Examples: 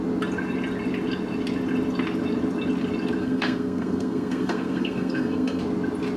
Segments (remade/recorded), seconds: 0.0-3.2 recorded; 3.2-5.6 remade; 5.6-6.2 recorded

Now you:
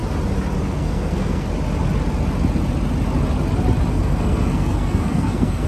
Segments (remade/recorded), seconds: 0.0-0.6 recorded; 0.6-1.5 remade; 1.5-3.9 recorded; 3.9-5.7 remade

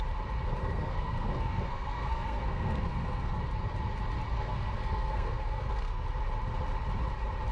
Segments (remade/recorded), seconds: 0.0-0.6 recorded; 0.6-3.4 remade; 3.4-4.3 recorded; 4.3-6.0 remade; 6.0-7.5 recorded

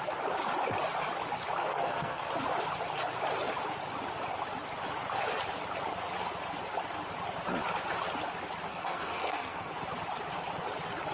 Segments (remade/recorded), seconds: 0.0-1.6 recorded; 1.6-2.3 remade; 2.3-8.7 recorded; 8.7-9.7 remade; 9.7-11.1 recorded